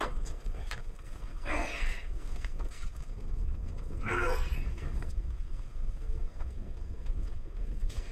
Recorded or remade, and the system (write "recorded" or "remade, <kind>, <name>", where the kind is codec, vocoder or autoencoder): remade, codec, SNAC